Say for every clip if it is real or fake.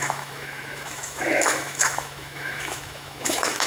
fake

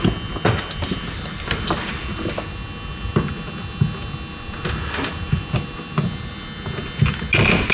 real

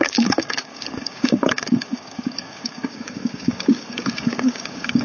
fake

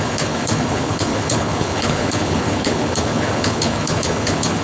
fake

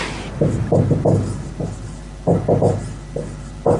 real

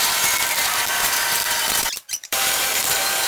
fake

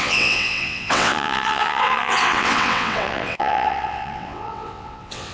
fake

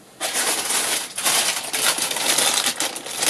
real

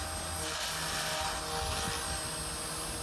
real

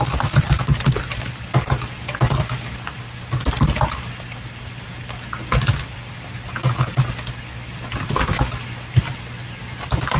real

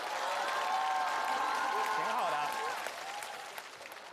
real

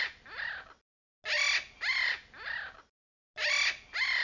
real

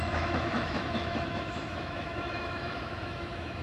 fake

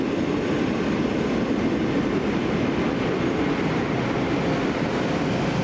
real